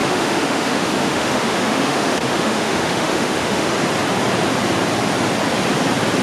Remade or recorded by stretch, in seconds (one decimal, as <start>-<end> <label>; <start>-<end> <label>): 0.0-3.7 remade; 3.7-6.2 recorded